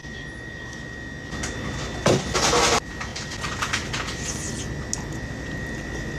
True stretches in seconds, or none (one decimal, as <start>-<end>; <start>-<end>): 0.0-6.2